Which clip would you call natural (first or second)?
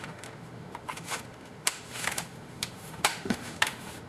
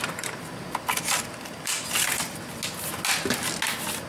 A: second